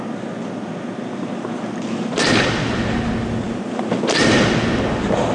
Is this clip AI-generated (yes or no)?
no